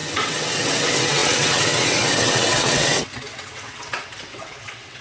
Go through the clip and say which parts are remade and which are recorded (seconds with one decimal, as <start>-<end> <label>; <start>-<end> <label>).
0.0-5.0 remade